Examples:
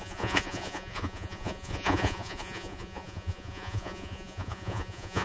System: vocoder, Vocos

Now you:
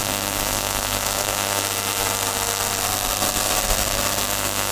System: codec, SNAC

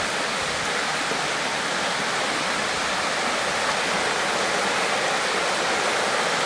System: none